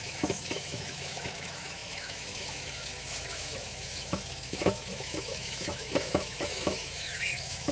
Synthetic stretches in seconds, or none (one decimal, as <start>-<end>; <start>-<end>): 0.0-7.7